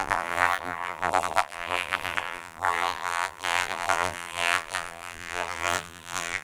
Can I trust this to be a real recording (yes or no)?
no